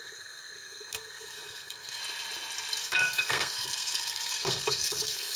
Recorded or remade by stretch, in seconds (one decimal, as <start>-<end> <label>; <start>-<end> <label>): 0.0-2.0 remade; 2.0-2.8 recorded; 2.8-5.4 remade